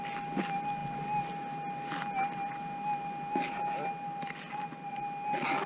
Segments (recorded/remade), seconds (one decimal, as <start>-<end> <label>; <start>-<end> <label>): 0.0-5.7 recorded